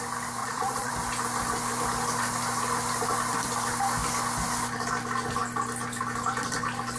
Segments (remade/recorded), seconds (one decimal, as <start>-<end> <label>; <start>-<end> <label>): 0.0-0.4 recorded; 0.4-0.9 remade; 0.9-7.0 recorded